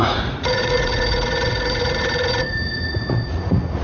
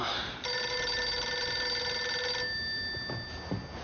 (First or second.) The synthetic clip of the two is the first